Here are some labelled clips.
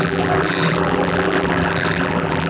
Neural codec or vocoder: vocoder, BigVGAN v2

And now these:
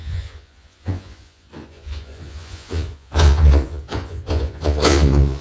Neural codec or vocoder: vocoder, Vocos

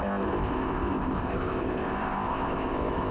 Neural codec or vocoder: codec, ZipCodec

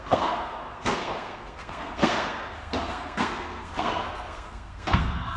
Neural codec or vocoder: codec, SNAC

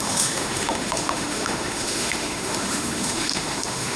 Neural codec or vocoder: autoencoder, DAC-VAE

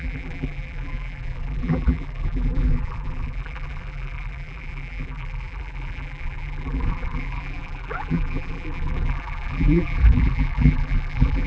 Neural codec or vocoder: vocoder, BigVGAN v2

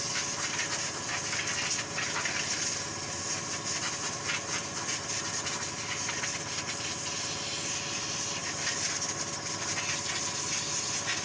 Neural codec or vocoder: none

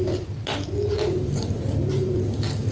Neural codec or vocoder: none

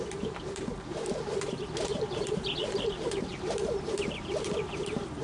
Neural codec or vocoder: vocoder, BigVGAN v2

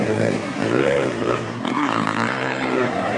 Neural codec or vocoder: codec, SNAC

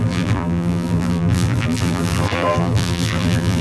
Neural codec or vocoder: vocoder, BigVGAN v2